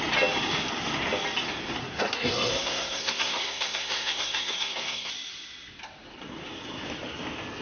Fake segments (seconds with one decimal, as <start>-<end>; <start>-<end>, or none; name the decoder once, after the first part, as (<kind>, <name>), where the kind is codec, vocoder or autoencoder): 1.8-5.1 (codec, SNAC)